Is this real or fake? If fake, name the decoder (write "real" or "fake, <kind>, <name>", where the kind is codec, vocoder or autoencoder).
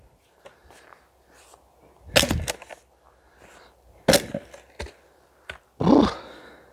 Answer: real